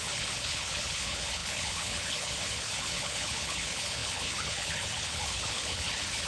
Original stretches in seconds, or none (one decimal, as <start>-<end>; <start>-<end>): none